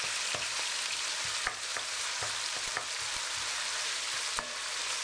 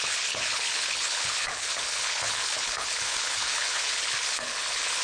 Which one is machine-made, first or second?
second